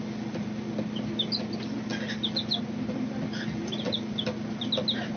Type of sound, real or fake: real